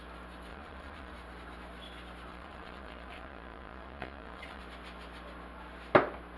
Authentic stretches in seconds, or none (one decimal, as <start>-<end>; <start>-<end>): 0.0-0.5; 1.1-2.3; 4.6-6.4